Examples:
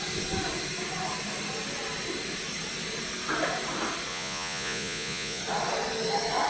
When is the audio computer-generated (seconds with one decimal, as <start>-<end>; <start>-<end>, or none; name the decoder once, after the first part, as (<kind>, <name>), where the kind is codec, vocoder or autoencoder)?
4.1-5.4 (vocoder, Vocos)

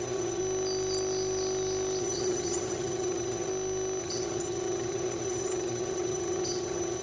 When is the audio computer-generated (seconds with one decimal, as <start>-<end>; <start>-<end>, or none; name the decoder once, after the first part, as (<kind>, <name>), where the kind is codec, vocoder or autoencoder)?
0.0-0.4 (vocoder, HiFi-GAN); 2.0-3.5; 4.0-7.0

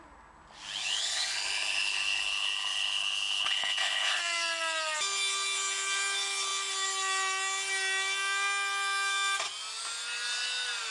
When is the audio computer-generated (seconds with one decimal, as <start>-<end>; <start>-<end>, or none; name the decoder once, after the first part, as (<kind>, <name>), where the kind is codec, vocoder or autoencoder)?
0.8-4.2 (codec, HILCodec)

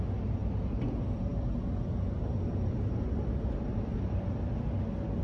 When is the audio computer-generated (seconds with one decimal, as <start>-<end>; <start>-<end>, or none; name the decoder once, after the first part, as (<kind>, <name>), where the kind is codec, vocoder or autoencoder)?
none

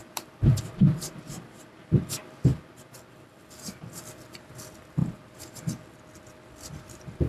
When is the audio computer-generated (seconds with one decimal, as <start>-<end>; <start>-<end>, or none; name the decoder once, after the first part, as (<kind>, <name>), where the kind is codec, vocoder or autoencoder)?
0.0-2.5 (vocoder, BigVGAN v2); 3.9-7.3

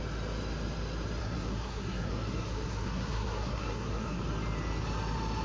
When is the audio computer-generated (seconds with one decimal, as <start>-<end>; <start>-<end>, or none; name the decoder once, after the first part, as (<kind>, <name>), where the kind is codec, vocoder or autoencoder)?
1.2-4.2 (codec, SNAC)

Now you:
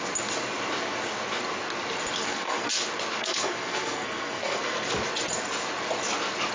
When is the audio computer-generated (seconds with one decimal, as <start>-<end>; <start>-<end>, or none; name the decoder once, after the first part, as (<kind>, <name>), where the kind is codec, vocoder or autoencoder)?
2.2-2.7 (codec, SNAC); 3.2-4.9